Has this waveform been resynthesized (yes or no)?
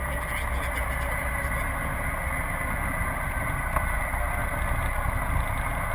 no